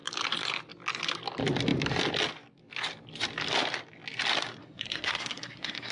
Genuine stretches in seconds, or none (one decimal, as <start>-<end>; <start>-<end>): 0.0-4.6